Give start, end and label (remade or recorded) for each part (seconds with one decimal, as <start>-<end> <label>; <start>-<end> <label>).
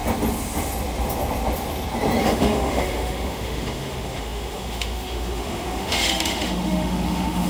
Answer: 0.0-2.2 recorded; 2.2-7.5 remade